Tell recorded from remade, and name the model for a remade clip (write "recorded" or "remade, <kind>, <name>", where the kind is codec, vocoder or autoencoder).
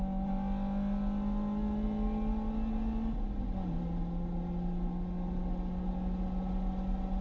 recorded